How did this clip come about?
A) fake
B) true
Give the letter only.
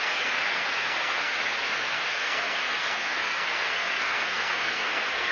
A